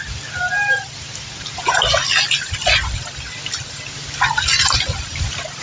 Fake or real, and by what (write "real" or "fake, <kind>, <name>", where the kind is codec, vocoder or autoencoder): real